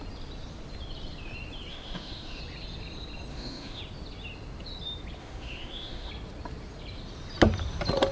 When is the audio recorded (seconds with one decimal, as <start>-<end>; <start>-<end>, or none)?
0.0-1.7; 2.4-3.3; 3.8-5.2; 6.1-8.1